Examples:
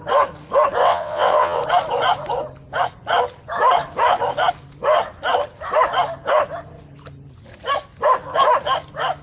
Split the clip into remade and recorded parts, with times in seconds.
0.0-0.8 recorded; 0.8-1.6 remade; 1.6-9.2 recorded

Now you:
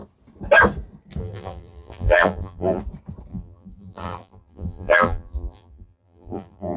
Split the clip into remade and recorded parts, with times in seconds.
0.0-1.2 recorded; 1.2-2.8 remade; 2.8-3.3 recorded; 3.3-6.8 remade

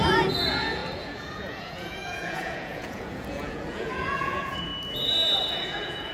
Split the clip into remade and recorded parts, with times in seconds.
0.0-4.7 remade; 4.7-5.6 recorded; 5.6-6.1 remade